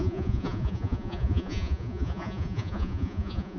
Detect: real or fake fake